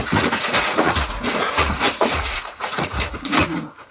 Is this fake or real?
fake